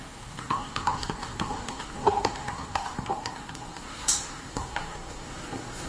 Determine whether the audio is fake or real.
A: fake